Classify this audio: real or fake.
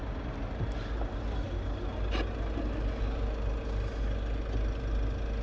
real